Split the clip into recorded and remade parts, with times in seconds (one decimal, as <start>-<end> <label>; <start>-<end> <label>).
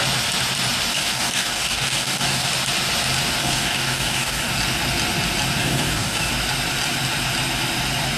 0.0-0.9 recorded; 0.9-2.5 remade; 2.5-3.4 recorded; 3.4-4.5 remade; 4.5-5.6 recorded; 5.6-6.3 remade; 6.3-8.2 recorded